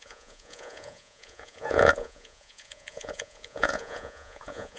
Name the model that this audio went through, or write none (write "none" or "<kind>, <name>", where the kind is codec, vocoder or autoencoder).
vocoder, Vocos